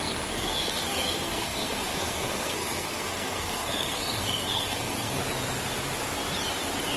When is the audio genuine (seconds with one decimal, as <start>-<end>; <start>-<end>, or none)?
5.2-7.0